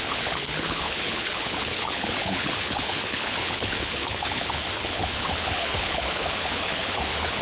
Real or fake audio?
fake